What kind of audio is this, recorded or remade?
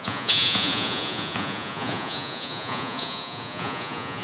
remade